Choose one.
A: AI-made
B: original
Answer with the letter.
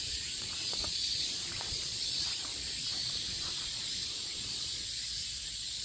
A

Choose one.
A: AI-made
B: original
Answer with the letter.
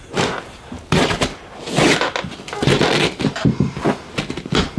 B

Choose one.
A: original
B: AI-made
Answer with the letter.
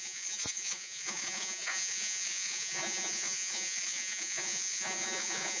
B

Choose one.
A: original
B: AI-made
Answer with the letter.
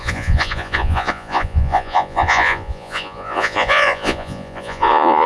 B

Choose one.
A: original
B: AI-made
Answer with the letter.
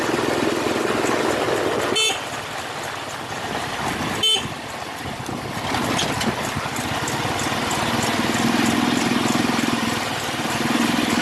A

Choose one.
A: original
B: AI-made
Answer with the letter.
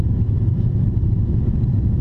B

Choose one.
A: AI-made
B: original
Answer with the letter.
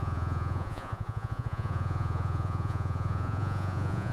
A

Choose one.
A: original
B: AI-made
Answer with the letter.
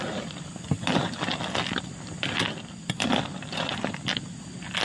A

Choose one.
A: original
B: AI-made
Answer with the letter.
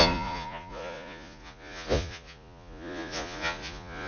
B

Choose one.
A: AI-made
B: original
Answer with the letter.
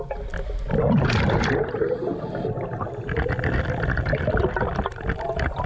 B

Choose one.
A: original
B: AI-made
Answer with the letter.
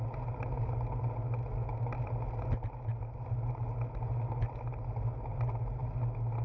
A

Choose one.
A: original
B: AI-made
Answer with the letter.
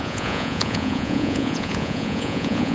B